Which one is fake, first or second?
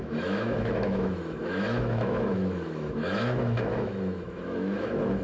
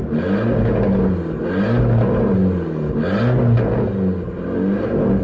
first